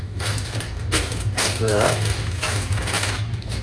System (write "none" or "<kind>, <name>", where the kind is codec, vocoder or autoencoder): codec, DAC